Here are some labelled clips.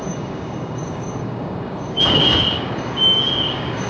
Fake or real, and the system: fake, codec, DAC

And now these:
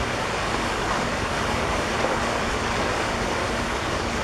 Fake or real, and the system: fake, codec, DAC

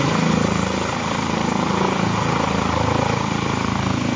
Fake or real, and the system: real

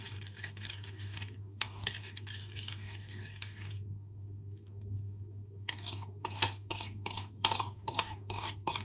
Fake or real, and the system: fake, codec, DAC